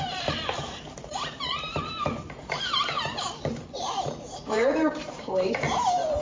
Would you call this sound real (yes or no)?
no